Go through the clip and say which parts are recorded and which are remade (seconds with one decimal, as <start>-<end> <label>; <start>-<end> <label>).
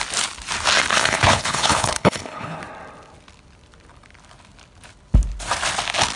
0.0-0.9 recorded; 0.9-2.6 remade; 2.6-6.2 recorded